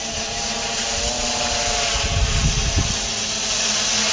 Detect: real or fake real